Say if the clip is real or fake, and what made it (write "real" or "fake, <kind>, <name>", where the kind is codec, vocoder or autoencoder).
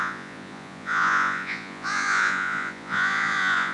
fake, vocoder, Vocos